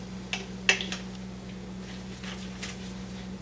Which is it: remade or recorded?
recorded